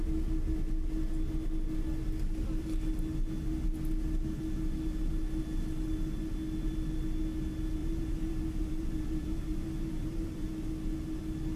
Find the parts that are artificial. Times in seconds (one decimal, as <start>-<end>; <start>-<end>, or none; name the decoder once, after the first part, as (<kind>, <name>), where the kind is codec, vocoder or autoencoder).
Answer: 7.8-10.5 (vocoder, BigVGAN v2)